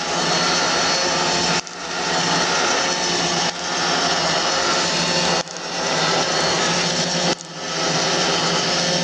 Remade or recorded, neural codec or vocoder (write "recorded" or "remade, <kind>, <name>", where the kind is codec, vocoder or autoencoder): recorded